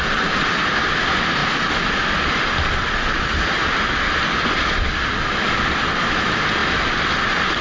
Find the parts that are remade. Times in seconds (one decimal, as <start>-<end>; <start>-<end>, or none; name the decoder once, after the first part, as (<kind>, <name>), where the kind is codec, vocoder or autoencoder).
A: none